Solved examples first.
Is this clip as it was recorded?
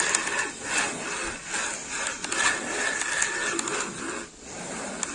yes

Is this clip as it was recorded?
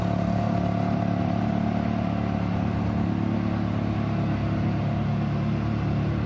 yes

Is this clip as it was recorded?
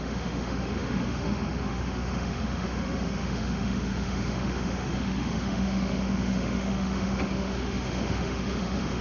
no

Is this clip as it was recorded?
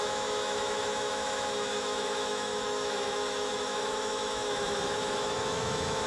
no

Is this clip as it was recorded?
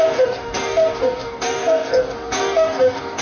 no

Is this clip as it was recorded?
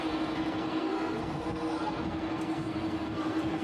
no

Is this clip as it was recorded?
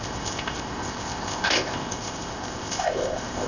no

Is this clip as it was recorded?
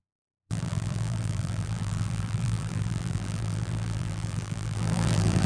no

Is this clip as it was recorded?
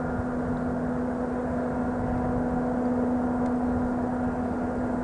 yes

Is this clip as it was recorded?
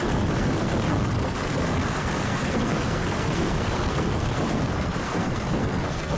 no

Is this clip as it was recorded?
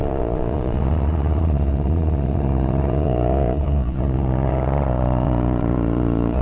no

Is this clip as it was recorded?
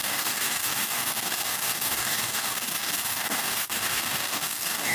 no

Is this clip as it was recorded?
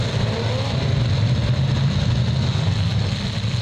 yes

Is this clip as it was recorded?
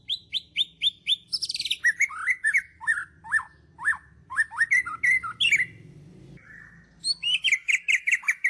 yes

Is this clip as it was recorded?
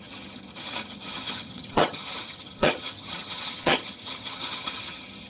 no